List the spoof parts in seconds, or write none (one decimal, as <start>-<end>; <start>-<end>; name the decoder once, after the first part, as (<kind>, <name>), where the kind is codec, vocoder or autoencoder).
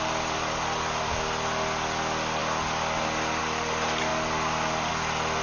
none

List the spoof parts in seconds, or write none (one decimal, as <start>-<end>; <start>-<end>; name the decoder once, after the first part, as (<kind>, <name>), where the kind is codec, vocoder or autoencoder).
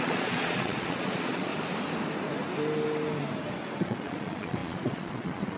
0.0-1.5 (vocoder, Vocos); 3.8-5.6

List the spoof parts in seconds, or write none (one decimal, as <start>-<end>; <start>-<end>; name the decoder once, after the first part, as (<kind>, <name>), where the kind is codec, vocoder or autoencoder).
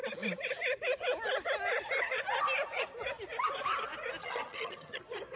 4.2-5.0 (vocoder, HiFi-GAN)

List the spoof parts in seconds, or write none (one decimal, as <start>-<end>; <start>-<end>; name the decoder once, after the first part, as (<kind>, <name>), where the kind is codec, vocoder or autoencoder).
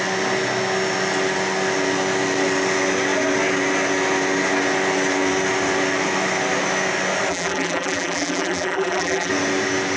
7.3-9.3 (vocoder, BigVGAN v2)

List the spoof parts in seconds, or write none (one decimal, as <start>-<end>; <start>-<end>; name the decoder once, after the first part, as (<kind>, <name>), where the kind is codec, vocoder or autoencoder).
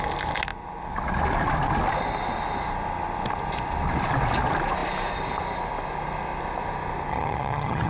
7.1-7.9 (vocoder, HiFi-GAN)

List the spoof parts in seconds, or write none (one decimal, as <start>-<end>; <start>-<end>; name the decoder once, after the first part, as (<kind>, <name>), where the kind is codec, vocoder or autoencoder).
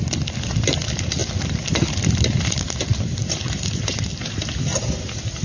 none